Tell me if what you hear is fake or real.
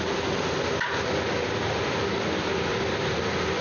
real